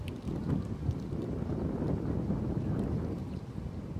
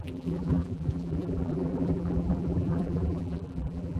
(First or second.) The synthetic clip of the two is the second